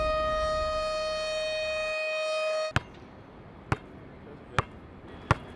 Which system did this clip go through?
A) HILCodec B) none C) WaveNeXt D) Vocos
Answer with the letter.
B